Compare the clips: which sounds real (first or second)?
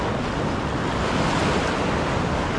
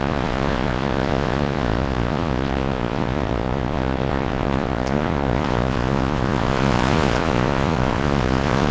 first